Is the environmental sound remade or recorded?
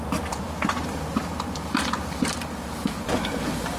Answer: remade